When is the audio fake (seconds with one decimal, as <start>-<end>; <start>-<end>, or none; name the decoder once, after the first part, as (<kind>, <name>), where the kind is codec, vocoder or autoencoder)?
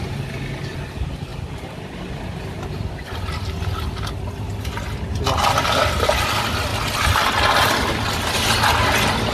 none